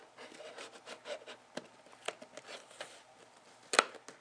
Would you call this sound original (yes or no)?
yes